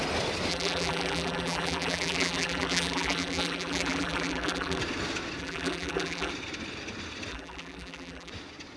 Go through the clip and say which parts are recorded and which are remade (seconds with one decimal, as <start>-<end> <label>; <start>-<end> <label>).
0.0-0.5 recorded; 0.5-4.8 remade; 4.8-5.4 recorded; 5.4-6.3 remade; 6.3-7.3 recorded; 7.3-8.3 remade; 8.3-8.8 recorded